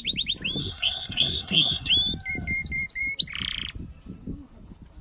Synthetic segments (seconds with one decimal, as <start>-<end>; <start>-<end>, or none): 0.6-1.9